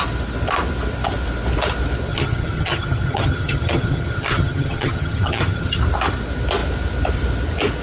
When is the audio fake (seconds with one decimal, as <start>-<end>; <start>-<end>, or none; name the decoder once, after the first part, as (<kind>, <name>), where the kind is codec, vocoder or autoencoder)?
2.1-5.8 (vocoder, HiFi-GAN)